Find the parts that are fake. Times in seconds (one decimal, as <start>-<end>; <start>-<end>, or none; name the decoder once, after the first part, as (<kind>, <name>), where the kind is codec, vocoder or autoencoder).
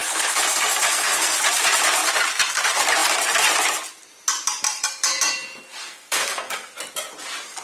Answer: 0.0-1.4 (codec, SNAC); 5.8-6.7